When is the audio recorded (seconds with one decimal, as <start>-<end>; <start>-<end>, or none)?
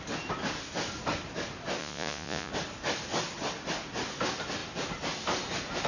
0.0-1.8; 2.5-5.9